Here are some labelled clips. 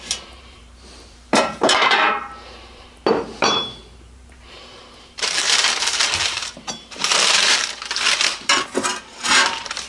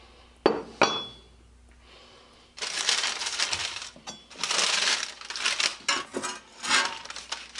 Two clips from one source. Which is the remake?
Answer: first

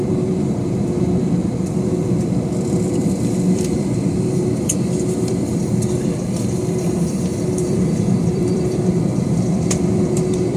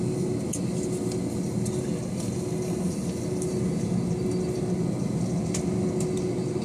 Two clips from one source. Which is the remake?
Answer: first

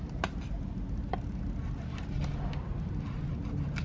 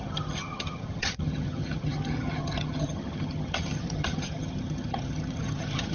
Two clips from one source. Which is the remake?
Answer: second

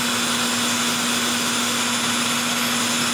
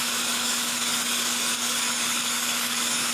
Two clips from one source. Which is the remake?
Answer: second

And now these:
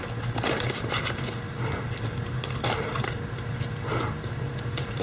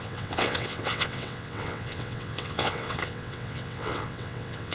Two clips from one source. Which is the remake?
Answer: second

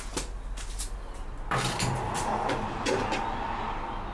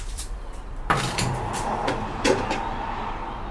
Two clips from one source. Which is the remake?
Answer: second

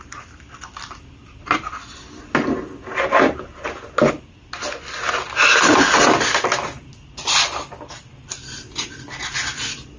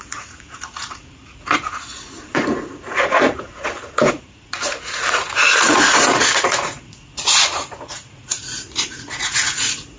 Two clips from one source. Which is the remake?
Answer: second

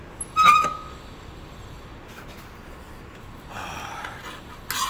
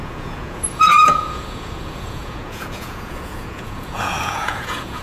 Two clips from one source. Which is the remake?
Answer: second